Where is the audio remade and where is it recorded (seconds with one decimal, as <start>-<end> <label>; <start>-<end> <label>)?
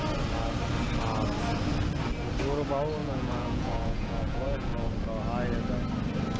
0.0-3.0 recorded; 3.0-4.9 remade; 4.9-6.4 recorded